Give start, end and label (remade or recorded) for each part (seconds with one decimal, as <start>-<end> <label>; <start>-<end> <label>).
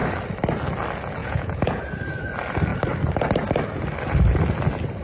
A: 0.0-1.2 recorded; 1.2-1.8 remade; 1.8-5.0 recorded